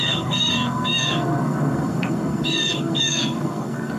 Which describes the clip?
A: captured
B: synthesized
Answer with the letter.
B